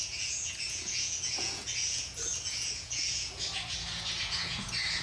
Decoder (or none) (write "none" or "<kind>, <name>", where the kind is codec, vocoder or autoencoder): vocoder, Vocos